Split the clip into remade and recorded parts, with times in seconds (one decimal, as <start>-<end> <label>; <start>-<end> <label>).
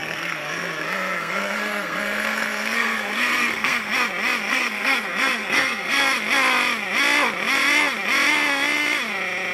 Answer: 0.0-3.9 remade; 3.9-4.5 recorded; 4.5-6.0 remade; 6.0-9.5 recorded